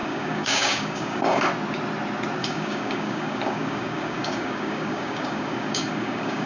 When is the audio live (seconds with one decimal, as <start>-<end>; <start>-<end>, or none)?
1.5-2.4